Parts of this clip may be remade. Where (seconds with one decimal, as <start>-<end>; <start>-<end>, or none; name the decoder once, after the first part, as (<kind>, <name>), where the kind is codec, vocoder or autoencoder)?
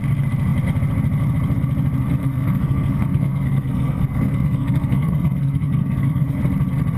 2.2-6.4 (codec, SNAC)